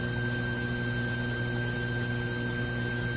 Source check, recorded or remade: recorded